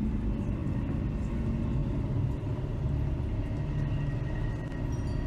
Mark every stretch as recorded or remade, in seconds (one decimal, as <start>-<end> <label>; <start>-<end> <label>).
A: 0.0-1.8 recorded; 1.8-2.9 remade; 2.9-5.3 recorded